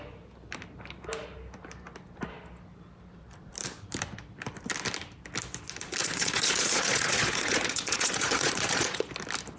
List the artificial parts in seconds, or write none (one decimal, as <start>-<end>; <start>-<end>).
6.0-9.1